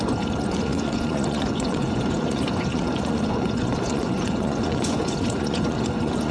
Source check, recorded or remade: remade